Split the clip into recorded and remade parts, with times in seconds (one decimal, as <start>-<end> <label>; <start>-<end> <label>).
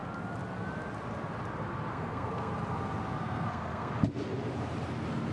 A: 0.0-1.9 recorded; 1.9-2.5 remade; 2.5-3.2 recorded; 3.2-3.9 remade; 3.9-5.3 recorded